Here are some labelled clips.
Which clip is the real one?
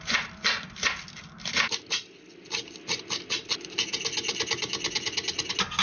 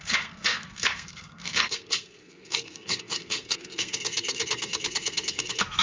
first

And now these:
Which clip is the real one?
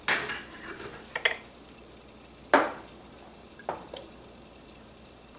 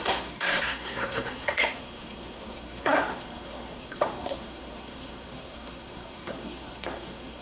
first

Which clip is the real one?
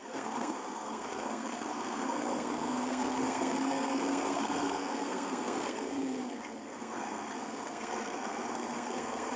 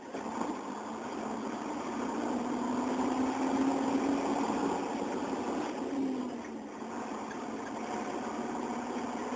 second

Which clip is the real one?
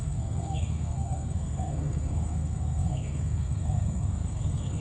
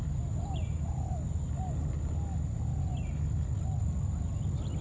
second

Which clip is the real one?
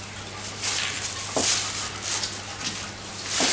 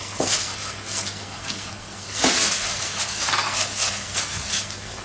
first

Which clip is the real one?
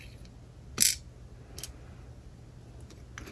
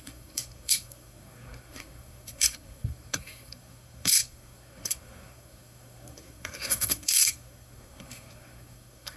first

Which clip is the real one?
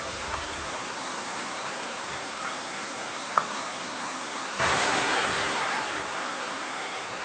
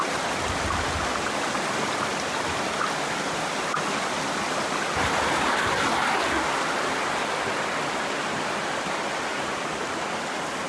second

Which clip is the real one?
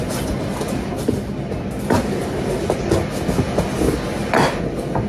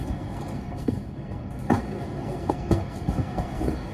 first